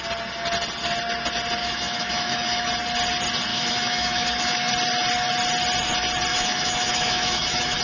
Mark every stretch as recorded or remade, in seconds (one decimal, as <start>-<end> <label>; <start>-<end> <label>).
0.0-1.6 recorded; 1.6-2.7 remade; 2.7-3.5 recorded; 3.5-4.7 remade; 4.7-6.3 recorded; 6.3-7.8 remade